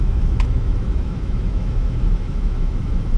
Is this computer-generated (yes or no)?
yes